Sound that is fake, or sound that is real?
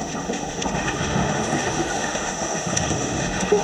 fake